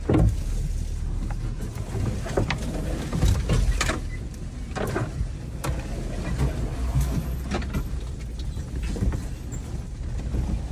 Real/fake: real